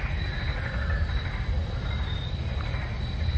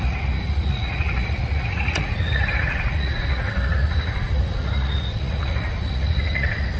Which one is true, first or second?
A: first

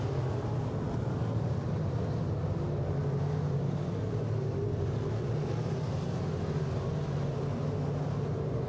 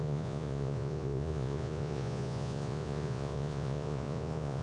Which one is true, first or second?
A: first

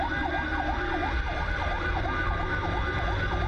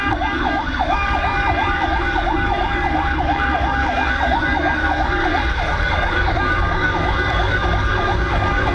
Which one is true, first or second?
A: first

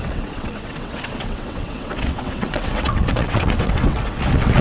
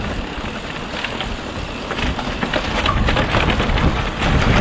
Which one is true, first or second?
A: second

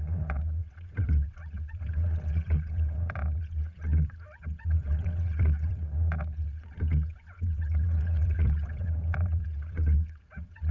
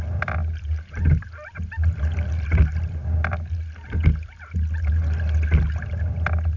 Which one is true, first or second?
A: second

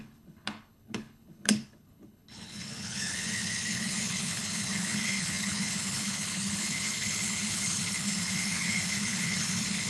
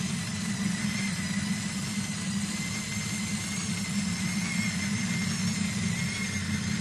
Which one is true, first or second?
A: second